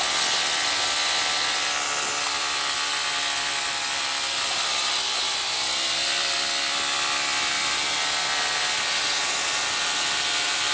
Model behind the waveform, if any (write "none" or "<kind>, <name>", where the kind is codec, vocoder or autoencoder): none